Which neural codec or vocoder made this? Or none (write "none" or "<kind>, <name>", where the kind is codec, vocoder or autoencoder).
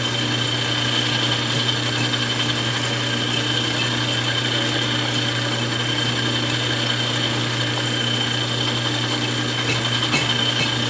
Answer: none